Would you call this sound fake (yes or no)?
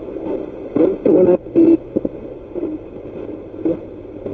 no